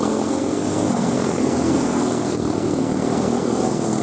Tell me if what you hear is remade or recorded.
remade